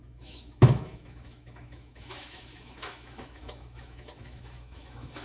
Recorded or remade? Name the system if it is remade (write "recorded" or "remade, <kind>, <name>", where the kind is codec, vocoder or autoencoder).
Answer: remade, autoencoder, DAC-VAE